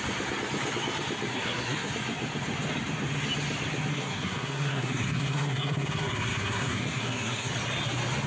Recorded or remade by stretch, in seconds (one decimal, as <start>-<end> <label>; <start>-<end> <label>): 0.0-1.3 recorded; 1.3-1.9 remade; 1.9-3.9 recorded; 3.9-7.5 remade; 7.5-8.3 recorded